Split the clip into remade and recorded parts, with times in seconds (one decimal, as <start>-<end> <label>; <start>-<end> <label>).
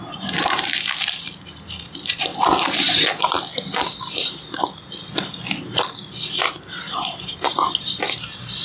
0.0-2.3 remade; 2.3-7.2 recorded; 7.2-8.6 remade